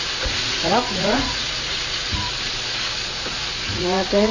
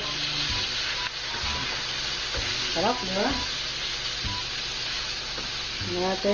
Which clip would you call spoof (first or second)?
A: first